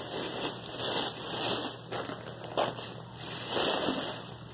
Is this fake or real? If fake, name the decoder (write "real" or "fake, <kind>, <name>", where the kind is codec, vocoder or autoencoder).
real